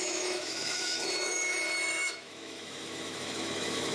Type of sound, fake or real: fake